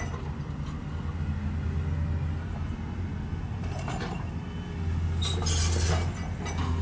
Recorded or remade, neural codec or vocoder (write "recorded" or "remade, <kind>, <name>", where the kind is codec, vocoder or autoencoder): recorded